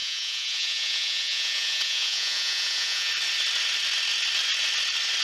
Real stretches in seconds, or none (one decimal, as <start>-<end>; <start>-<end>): 3.1-5.2